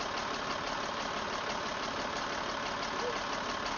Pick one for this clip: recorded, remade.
recorded